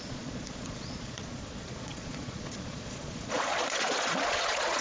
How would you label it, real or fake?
fake